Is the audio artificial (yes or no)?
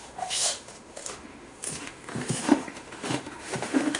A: yes